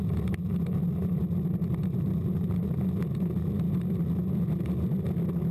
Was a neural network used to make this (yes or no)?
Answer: no